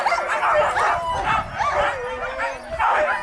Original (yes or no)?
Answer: yes